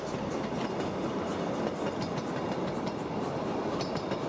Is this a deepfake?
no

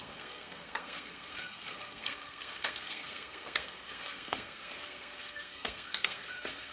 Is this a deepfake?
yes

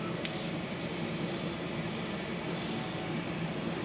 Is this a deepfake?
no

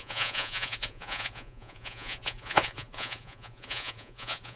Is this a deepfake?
yes